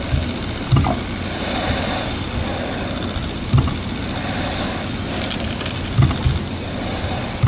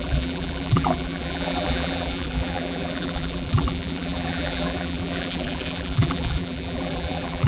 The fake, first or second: second